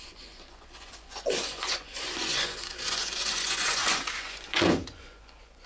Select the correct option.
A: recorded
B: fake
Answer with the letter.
B